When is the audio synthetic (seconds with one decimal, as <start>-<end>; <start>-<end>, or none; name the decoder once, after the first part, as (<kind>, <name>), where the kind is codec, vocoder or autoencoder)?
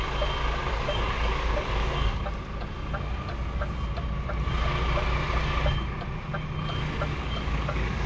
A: 0.7-2.2 (codec, DAC); 7.1-8.1